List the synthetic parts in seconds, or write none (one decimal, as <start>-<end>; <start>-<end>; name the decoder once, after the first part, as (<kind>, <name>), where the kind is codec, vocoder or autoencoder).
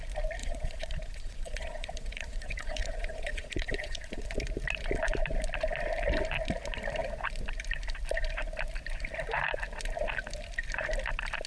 0.4-4.4 (vocoder, Vocos)